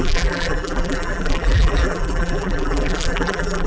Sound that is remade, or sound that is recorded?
remade